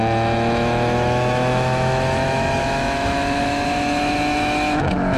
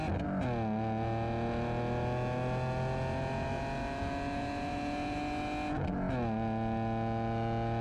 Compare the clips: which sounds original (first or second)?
second